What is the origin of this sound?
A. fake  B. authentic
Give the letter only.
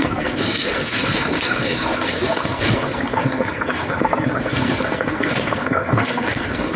A